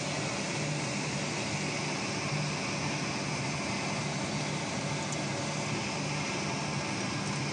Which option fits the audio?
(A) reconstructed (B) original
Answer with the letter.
B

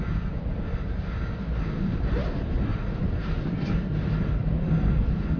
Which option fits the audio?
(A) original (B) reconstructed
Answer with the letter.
B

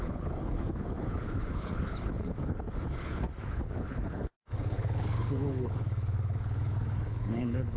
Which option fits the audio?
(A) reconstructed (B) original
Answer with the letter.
A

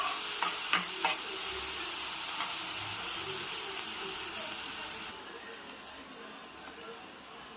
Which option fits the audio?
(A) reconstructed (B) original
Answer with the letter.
B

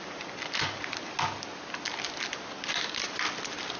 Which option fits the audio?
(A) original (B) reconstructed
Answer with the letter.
A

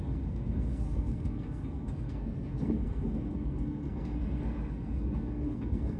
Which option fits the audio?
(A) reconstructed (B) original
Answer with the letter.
A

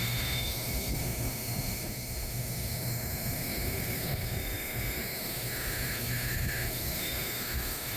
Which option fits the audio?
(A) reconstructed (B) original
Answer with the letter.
A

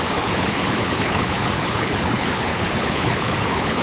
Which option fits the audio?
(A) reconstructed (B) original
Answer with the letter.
A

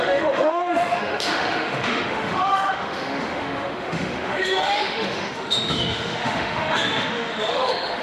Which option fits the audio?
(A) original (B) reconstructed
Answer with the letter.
B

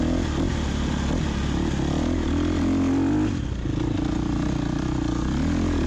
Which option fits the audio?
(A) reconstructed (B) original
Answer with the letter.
B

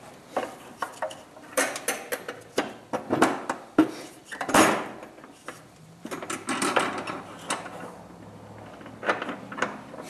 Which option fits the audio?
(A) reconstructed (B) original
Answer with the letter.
B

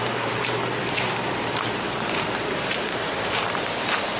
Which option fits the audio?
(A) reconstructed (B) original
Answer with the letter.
A